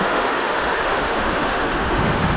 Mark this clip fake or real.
fake